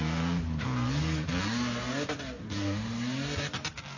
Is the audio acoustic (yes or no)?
yes